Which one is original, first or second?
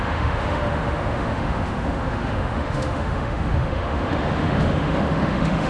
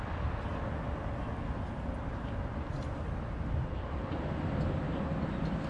second